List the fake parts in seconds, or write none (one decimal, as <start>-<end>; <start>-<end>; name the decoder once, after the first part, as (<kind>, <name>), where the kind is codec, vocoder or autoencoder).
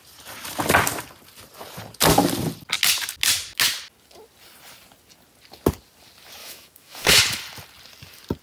6.4-7.2 (autoencoder, DAC-VAE)